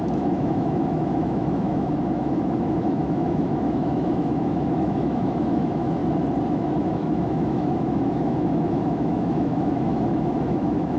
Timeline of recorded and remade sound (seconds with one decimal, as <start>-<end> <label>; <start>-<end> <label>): 0.0-6.0 remade; 6.0-6.5 recorded; 6.5-11.0 remade